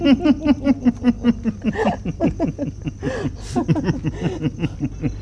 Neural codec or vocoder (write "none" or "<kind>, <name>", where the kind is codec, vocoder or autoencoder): none